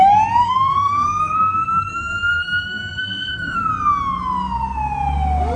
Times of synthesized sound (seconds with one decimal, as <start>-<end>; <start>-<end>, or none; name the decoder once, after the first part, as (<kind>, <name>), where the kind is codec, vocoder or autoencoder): 0.4-3.7 (codec, SNAC)